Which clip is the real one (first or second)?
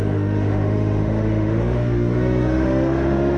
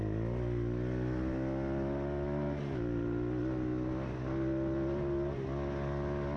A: second